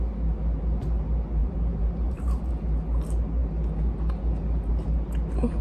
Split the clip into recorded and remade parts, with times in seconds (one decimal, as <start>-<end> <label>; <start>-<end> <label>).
0.0-1.4 recorded; 1.4-2.5 remade; 2.5-5.6 recorded